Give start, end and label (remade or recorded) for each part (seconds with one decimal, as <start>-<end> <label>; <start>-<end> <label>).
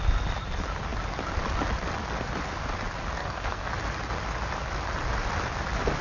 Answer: 0.0-3.2 recorded; 3.2-3.7 remade; 3.7-6.0 recorded